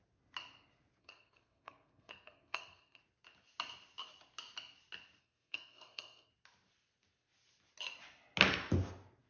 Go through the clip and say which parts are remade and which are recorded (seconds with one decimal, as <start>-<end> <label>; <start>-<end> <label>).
0.0-1.0 recorded; 1.0-3.0 remade; 3.0-5.2 recorded; 5.2-6.3 remade; 6.3-9.3 recorded